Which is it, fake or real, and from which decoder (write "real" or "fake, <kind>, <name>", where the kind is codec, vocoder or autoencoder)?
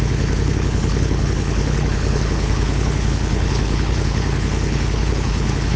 fake, codec, HILCodec